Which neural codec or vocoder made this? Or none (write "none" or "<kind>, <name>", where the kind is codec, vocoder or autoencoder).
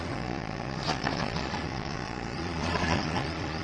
vocoder, Vocos